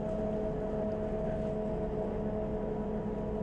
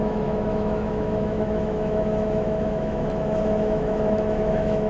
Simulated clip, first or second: second